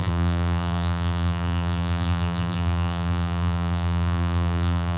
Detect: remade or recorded remade